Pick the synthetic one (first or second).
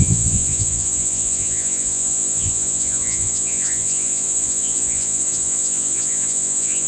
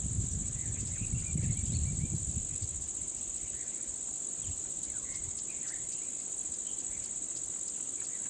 first